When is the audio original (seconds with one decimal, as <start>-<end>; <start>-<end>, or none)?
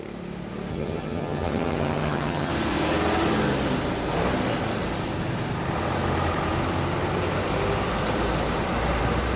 0.0-0.7; 2.5-9.4